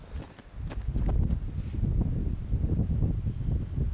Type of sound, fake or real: real